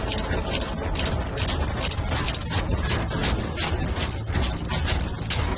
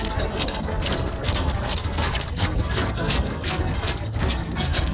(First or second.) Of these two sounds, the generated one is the second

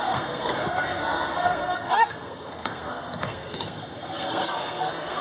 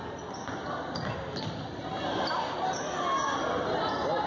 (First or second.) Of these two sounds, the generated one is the first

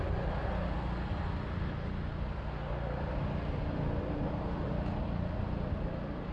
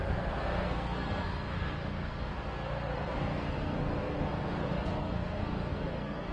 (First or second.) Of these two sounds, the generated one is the second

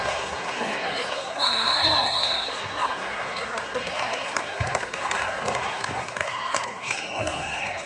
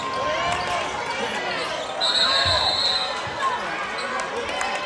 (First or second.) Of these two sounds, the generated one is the first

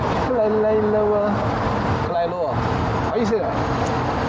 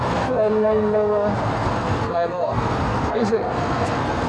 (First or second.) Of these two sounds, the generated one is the second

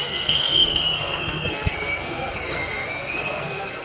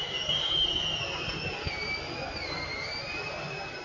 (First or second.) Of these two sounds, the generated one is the first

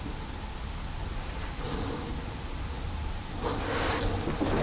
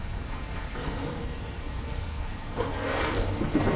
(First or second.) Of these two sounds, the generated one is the second